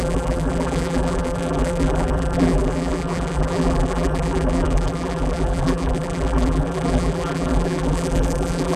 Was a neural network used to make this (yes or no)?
yes